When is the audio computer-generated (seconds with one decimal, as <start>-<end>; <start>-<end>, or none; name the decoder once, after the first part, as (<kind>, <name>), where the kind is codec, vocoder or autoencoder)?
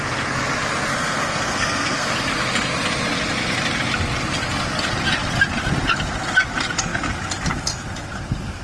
0.9-2.1 (codec, SNAC)